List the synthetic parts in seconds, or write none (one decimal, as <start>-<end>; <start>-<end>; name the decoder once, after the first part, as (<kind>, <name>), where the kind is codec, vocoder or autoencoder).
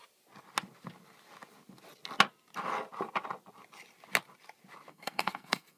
4.9-5.8 (codec, SNAC)